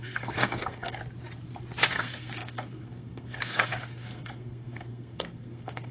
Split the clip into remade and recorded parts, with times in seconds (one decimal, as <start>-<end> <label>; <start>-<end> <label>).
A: 0.0-1.0 remade; 1.0-1.9 recorded; 1.9-5.9 remade